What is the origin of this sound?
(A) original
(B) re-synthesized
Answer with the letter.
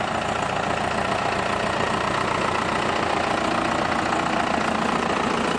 A